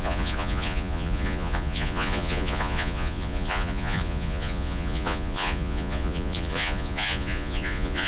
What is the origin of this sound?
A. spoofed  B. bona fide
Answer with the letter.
A